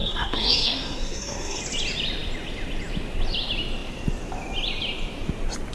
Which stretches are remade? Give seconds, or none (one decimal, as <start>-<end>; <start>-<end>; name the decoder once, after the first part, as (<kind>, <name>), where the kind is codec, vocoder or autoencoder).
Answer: 0.0-1.6 (codec, SNAC)